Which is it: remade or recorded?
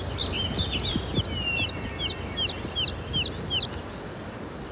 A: recorded